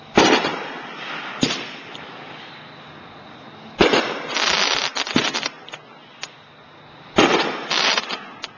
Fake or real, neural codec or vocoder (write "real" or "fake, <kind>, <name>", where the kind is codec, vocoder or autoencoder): real